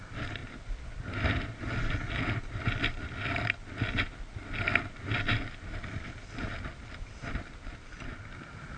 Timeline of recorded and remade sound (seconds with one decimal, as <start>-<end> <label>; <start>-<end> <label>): 0.0-8.8 recorded